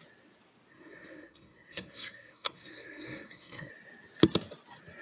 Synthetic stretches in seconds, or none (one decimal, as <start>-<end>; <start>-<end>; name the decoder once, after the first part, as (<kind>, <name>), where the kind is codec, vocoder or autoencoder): 0.7-3.7 (codec, SNAC)